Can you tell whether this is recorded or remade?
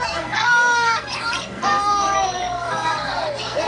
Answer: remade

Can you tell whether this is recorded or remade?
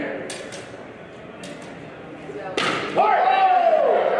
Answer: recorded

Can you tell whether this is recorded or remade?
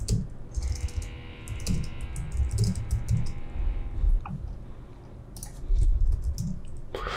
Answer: recorded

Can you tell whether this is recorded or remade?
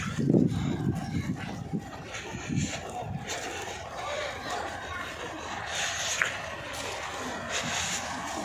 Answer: recorded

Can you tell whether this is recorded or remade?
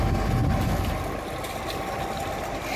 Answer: recorded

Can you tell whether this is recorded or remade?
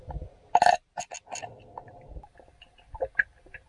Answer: recorded